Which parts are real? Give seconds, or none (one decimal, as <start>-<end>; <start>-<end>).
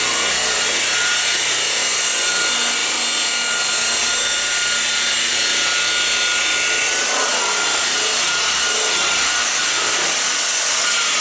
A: 0.0-1.8; 2.3-11.2